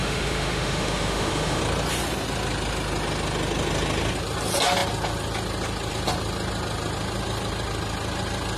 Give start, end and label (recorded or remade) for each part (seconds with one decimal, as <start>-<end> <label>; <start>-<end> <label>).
0.0-1.6 remade; 1.6-8.6 recorded